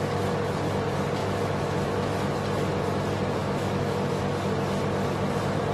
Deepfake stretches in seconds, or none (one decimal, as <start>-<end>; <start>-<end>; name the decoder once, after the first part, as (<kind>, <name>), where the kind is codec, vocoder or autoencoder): 1.2-1.9 (autoencoder, DAC-VAE); 3.4-4.2